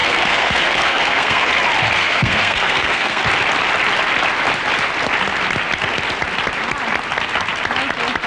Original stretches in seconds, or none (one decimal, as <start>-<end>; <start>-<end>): 1.5-2.0; 3.2-8.3